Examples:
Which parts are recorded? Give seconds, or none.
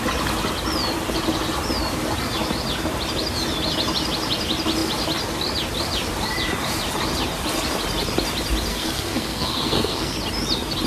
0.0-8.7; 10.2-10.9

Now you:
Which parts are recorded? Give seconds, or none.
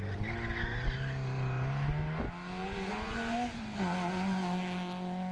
0.0-2.6; 3.6-5.3